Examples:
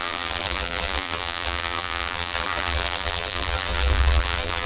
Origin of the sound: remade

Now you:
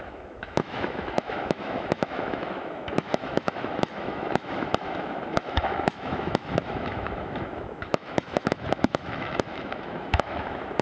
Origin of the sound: remade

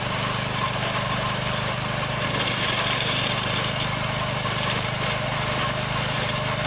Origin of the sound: remade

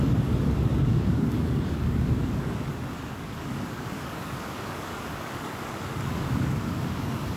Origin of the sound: remade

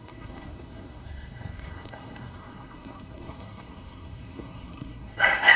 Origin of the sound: remade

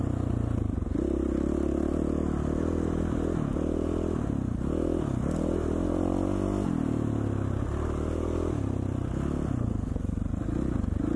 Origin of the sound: recorded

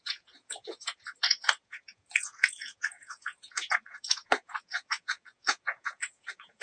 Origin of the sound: remade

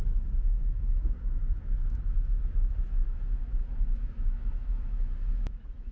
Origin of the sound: remade